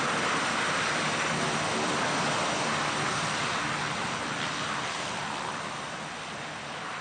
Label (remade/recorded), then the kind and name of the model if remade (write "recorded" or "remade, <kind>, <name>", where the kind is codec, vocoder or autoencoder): recorded